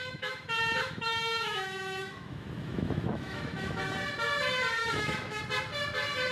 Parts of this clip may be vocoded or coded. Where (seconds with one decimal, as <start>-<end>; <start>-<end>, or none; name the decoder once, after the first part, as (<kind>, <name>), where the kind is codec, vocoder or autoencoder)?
0.0-3.8 (autoencoder, DAC-VAE); 4.8-5.4